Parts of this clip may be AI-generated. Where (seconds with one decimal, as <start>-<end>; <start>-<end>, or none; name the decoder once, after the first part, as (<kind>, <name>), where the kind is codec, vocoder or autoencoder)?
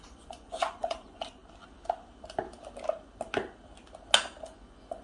0.0-1.4 (vocoder, Vocos); 4.4-5.0